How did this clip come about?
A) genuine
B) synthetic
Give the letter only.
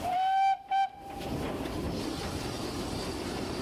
A